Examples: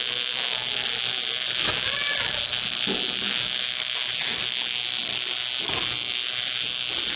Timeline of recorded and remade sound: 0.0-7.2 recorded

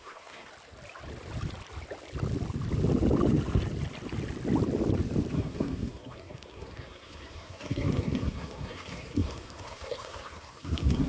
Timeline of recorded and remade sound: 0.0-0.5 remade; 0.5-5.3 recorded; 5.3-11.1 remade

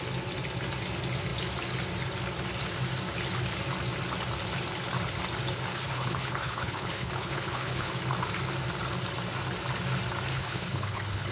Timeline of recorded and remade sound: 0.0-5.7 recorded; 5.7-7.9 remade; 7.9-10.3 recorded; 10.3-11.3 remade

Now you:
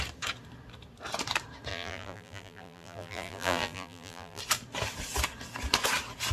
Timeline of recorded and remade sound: 0.0-1.7 recorded; 1.7-4.4 remade; 4.4-6.3 recorded

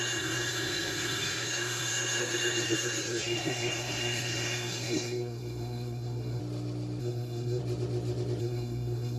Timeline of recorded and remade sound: 0.0-6.4 remade; 6.4-7.0 recorded; 7.0-7.6 remade; 7.6-8.4 recorded; 8.4-9.2 remade